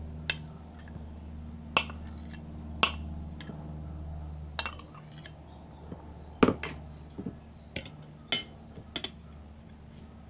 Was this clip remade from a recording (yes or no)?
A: no